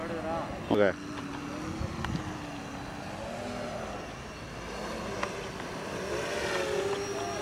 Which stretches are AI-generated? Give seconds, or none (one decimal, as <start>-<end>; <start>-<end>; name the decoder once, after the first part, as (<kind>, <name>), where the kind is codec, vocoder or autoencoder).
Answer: none